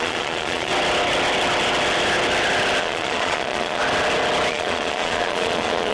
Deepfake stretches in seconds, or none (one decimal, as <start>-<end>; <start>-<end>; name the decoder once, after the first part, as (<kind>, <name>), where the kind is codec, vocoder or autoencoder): 0.0-0.7 (vocoder, Vocos); 2.8-3.8; 4.5-5.9